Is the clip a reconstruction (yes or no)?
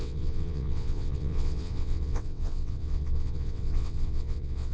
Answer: yes